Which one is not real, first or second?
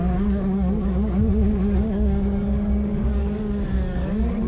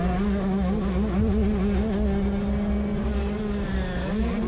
first